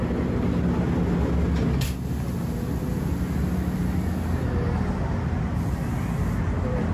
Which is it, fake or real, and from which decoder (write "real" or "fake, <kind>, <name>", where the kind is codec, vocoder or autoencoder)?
real